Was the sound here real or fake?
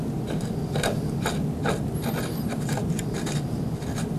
real